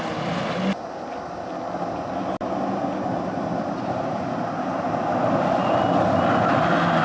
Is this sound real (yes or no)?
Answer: yes